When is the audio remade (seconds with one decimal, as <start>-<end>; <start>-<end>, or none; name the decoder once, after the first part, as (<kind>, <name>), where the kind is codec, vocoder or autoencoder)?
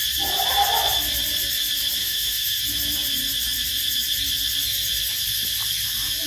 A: 2.0-2.6 (autoencoder, DAC-VAE)